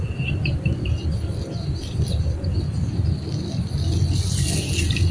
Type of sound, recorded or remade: recorded